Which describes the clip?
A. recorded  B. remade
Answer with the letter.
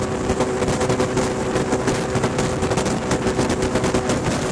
A